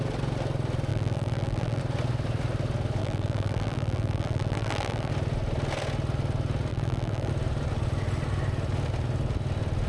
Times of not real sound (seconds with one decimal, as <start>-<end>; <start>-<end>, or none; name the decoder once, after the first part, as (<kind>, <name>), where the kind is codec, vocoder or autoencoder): 0.9-1.8 (vocoder, BigVGAN v2); 3.0-5.1; 6.7-7.3